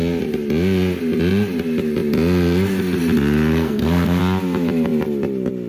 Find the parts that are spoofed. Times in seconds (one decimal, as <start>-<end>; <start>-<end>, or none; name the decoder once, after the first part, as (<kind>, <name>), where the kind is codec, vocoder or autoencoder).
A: 3.5-4.2 (codec, SNAC)